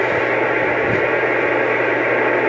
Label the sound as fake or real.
real